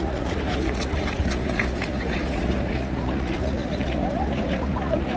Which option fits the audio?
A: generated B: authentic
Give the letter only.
A